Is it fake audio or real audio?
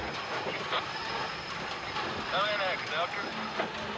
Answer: real